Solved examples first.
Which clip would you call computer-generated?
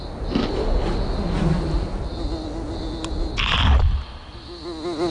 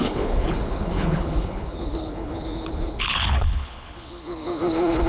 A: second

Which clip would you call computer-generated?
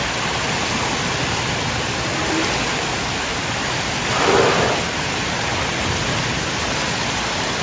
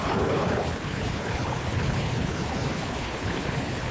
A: second